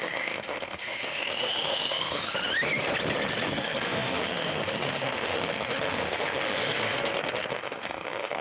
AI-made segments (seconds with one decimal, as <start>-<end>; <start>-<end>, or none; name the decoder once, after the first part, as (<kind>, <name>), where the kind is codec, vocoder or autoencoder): 0.0-2.3 (autoencoder, DAC-VAE); 3.6-8.4

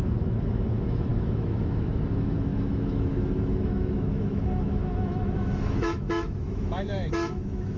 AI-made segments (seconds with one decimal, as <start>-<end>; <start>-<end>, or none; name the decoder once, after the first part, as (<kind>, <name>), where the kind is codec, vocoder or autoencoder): 0.0-7.8 (autoencoder, DAC-VAE)

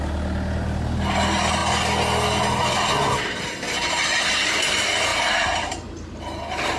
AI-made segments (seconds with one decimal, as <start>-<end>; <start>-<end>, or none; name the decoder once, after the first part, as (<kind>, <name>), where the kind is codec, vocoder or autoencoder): none

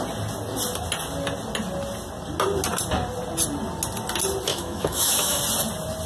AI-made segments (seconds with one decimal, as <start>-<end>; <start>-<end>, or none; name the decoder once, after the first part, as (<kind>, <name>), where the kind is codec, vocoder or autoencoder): 4.5-5.4 (autoencoder, DAC-VAE)

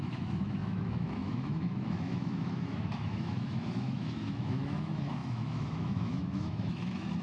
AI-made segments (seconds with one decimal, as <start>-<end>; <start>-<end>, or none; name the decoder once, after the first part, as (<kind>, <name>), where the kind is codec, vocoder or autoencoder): 0.0-7.2 (autoencoder, DAC-VAE)

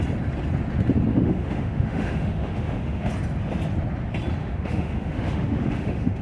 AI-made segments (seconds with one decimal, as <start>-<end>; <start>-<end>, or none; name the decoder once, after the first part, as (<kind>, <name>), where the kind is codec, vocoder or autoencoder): 1.1-3.1 (autoencoder, DAC-VAE); 4.4-6.2

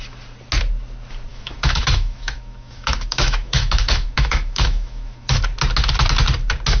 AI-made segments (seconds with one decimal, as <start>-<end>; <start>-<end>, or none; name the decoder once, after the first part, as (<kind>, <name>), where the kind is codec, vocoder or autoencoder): 1.3-5.4 (autoencoder, DAC-VAE)